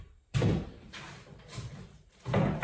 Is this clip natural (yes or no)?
no